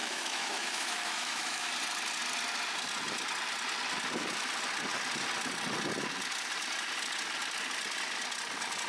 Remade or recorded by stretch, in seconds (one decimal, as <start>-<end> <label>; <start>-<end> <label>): 0.0-1.7 remade; 1.7-8.9 recorded